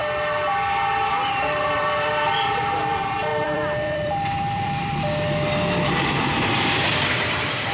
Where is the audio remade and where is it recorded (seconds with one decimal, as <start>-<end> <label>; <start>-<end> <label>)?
0.0-1.1 recorded; 1.1-4.9 remade; 4.9-6.9 recorded; 6.9-7.7 remade